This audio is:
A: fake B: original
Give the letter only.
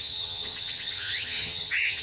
A